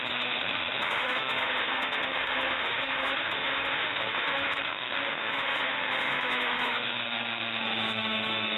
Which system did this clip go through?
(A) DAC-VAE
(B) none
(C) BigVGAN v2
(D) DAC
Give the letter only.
A